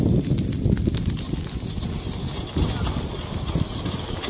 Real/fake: real